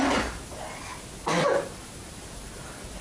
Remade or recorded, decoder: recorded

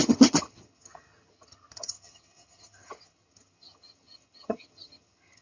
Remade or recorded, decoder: remade, vocoder, HiFi-GAN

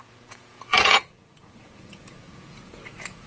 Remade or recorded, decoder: remade, vocoder, Vocos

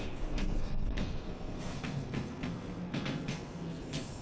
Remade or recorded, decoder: remade, codec, SNAC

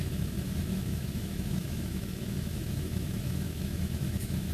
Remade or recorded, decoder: remade, autoencoder, DAC-VAE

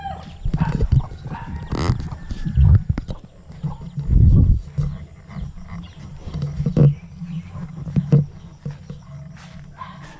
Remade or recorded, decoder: recorded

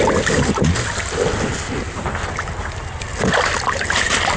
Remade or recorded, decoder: recorded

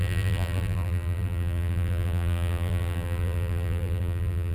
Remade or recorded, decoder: remade, vocoder, BigVGAN v2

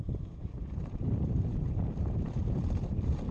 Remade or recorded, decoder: remade, vocoder, BigVGAN v2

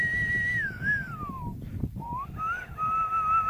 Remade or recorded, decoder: recorded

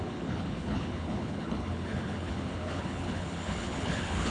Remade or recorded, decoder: remade, codec, HILCodec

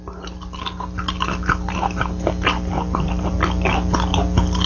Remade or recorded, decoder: recorded